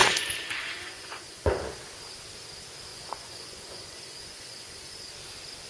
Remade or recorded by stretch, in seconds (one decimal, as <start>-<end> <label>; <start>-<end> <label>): 0.0-1.6 remade; 1.6-2.9 recorded; 2.9-5.1 remade; 5.1-5.7 recorded